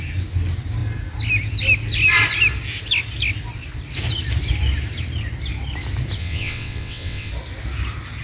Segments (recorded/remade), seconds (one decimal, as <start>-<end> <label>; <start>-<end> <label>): 0.0-6.2 recorded; 6.2-7.3 remade; 7.3-8.2 recorded